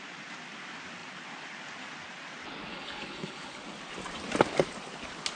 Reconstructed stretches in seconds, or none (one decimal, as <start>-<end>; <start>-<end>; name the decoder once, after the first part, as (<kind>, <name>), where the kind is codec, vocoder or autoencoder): 2.7-3.6 (codec, HILCodec)